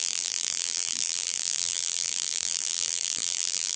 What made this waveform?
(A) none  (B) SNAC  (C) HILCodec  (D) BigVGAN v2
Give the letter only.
D